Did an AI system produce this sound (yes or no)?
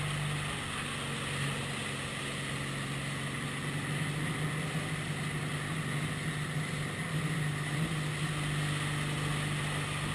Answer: no